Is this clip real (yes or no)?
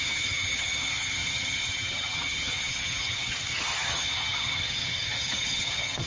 no